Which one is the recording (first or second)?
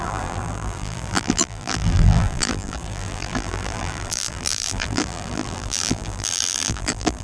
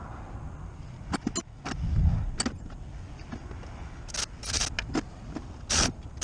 second